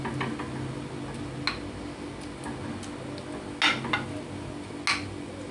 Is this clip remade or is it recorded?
recorded